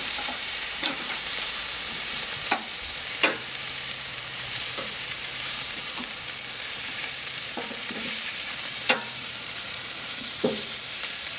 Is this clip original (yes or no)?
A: no